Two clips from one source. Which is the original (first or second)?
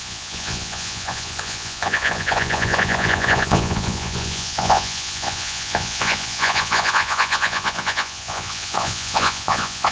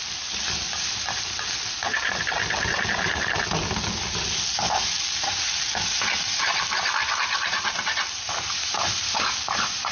second